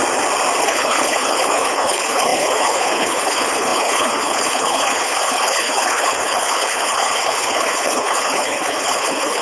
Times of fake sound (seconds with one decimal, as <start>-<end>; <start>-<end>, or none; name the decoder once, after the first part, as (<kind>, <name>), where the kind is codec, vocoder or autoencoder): 0.6-9.4 (codec, HILCodec)